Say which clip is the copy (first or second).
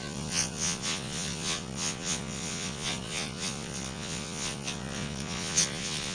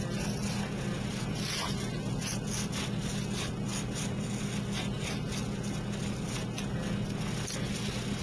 first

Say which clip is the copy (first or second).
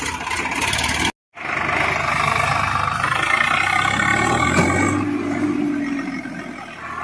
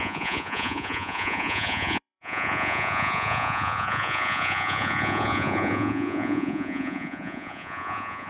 second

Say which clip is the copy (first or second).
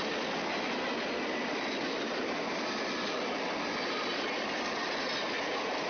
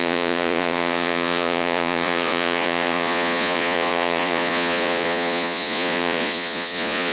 second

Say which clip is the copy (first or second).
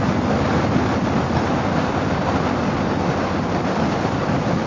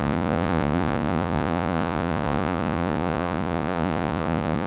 second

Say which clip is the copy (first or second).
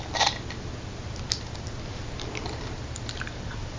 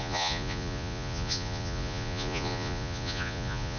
second